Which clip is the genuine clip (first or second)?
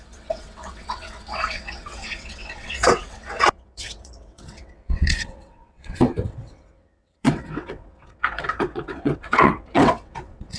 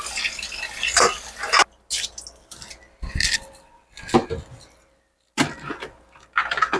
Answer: second